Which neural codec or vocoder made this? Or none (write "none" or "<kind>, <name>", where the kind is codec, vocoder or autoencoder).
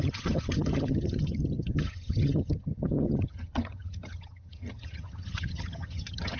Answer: vocoder, HiFi-GAN